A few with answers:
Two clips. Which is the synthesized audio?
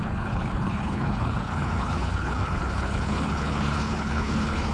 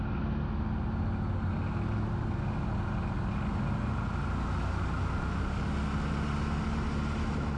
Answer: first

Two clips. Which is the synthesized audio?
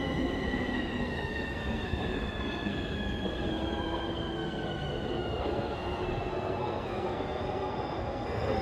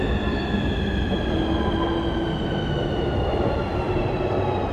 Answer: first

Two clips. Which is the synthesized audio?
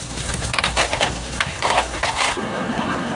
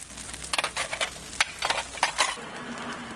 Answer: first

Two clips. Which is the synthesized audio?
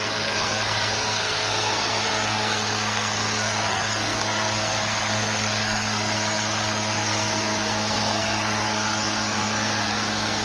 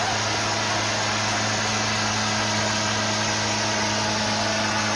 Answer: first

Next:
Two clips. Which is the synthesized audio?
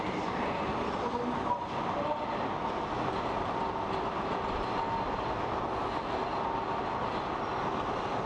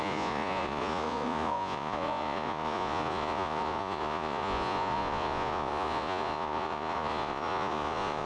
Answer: second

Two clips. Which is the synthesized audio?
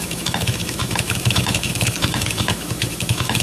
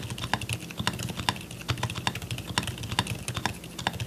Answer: first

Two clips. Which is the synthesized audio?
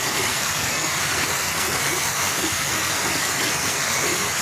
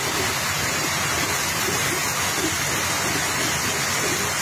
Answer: first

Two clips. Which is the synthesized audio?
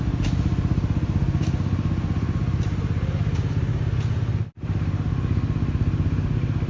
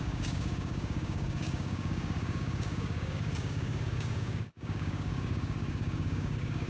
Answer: second